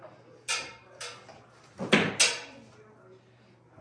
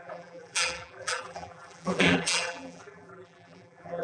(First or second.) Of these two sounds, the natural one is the first